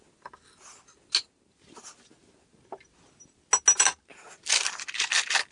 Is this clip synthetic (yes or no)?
no